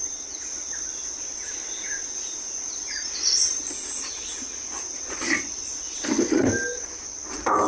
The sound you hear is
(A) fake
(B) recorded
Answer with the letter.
B